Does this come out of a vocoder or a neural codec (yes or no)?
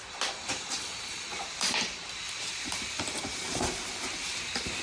yes